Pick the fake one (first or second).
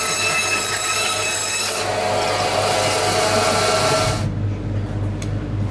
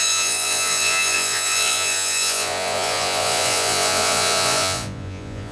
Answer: second